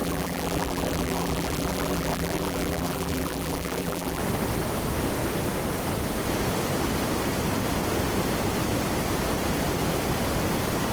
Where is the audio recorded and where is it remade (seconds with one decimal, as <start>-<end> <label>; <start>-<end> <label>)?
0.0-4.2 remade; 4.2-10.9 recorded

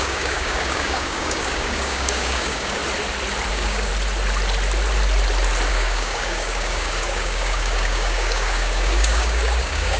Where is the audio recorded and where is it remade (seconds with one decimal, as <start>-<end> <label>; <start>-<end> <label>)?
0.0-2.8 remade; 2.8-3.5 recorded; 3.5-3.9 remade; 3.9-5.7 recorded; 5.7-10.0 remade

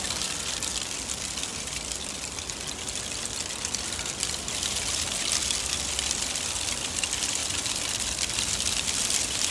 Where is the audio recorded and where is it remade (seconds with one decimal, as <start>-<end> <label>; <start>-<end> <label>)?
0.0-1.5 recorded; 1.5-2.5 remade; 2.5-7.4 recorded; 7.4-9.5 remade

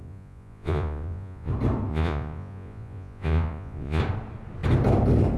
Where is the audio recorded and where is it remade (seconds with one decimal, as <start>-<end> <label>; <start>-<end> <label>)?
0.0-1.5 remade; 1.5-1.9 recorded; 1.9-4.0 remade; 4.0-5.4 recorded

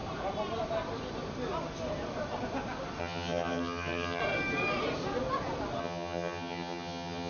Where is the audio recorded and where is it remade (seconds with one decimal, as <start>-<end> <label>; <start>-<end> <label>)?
0.0-3.0 recorded; 3.0-4.2 remade; 4.2-5.8 recorded; 5.8-7.3 remade